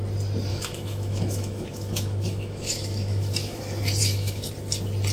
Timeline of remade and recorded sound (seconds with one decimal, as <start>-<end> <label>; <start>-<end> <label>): 0.0-0.5 recorded; 0.5-3.6 remade; 3.6-4.0 recorded; 4.0-4.5 remade; 4.5-5.1 recorded

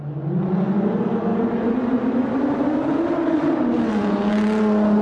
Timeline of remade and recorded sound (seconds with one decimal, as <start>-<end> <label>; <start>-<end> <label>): 0.0-5.0 recorded

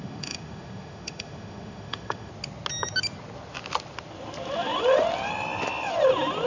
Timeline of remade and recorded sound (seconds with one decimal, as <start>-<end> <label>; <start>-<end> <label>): 0.0-2.3 remade; 2.3-6.5 recorded